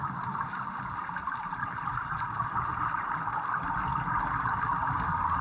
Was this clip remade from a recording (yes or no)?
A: no